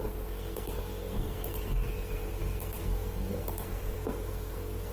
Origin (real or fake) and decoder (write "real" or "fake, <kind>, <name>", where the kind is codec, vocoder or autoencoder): fake, codec, SNAC